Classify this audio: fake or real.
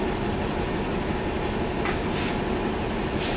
real